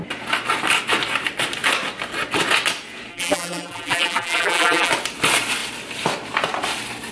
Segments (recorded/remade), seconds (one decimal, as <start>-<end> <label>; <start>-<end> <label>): 0.0-3.1 recorded; 3.1-4.9 remade; 4.9-7.1 recorded